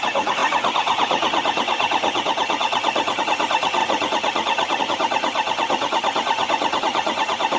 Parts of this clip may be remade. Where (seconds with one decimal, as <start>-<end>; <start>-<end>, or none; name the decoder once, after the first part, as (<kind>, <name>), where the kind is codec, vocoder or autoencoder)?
0.0-7.6 (vocoder, Vocos)